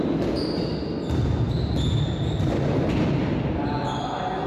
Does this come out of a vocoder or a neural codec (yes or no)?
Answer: no